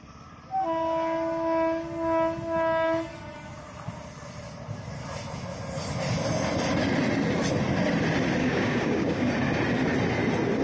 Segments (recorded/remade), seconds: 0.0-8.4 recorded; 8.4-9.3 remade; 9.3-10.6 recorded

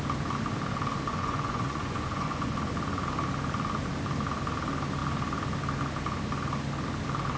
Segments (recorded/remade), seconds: 0.0-1.1 recorded; 1.1-2.7 remade; 2.7-7.4 recorded

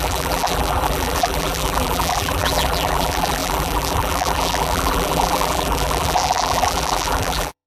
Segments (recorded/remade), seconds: 0.0-7.7 remade

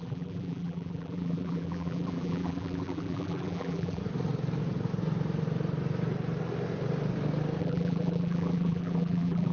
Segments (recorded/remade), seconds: 0.0-4.0 remade; 4.0-7.6 recorded; 7.6-9.5 remade

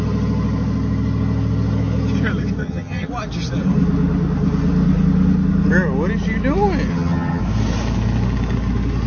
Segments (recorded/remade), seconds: 0.0-2.6 recorded; 2.6-3.1 remade; 3.1-6.9 recorded; 6.9-7.4 remade; 7.4-9.1 recorded

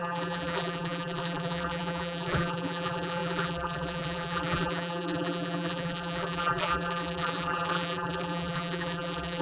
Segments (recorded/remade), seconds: 0.0-9.4 remade

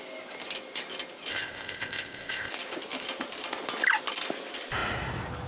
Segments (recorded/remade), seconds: 0.0-1.3 recorded; 1.3-2.5 remade; 2.5-5.5 recorded